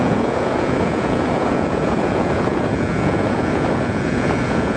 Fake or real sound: fake